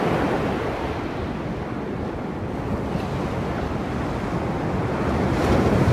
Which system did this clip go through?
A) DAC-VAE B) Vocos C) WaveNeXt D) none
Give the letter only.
D